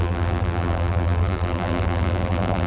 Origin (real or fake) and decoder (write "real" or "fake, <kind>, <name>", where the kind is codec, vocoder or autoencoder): fake, vocoder, BigVGAN v2